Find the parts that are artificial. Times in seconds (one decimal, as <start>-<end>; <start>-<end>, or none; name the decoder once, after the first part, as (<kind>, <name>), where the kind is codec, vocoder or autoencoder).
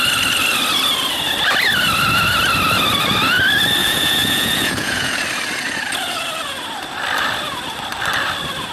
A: 3.8-5.2 (vocoder, Vocos)